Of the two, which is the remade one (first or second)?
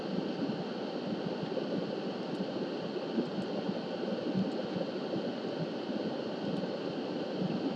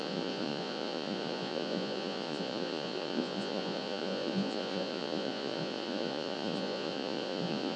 second